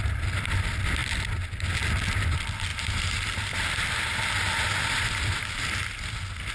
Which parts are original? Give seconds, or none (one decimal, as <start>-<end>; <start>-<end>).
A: 0.0-6.5